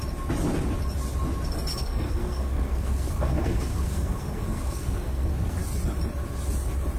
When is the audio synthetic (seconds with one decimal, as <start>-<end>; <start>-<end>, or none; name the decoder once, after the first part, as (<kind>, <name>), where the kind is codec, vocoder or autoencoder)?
1.7-5.6 (codec, SNAC)